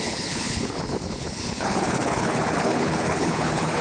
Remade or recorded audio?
remade